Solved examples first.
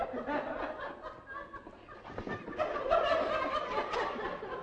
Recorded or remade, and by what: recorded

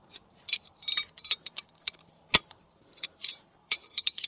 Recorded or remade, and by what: remade, vocoder, BigVGAN v2